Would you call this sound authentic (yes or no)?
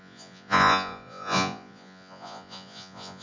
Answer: no